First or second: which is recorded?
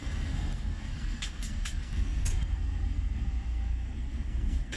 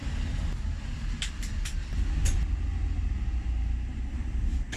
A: second